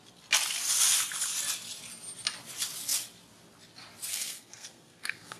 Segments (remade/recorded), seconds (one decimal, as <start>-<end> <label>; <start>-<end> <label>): 0.0-4.1 recorded; 4.1-5.4 remade